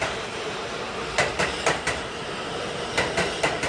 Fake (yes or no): no